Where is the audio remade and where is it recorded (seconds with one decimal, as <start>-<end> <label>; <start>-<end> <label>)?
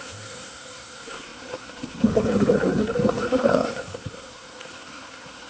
0.0-5.5 remade